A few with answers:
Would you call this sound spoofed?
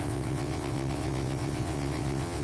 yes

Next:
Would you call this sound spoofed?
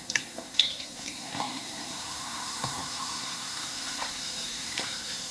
yes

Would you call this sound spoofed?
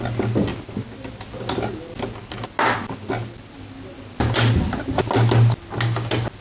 no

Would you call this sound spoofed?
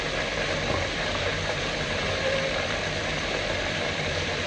yes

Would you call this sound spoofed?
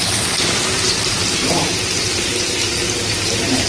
yes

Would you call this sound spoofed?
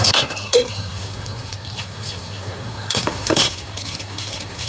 yes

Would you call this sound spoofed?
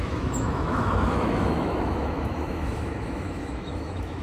yes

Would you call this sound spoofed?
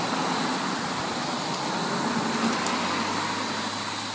no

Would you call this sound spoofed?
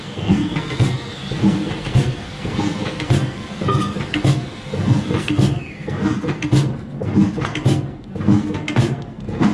yes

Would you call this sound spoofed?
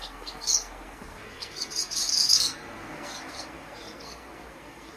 yes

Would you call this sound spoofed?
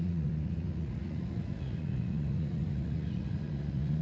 yes